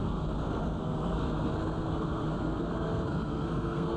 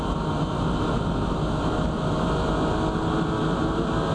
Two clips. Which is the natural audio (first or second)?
second